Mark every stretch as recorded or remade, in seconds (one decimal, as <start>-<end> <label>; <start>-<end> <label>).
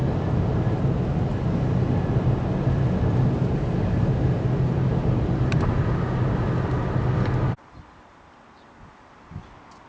0.0-0.6 remade; 0.6-5.0 recorded; 5.0-5.9 remade; 5.9-9.9 recorded